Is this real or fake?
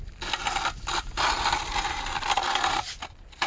real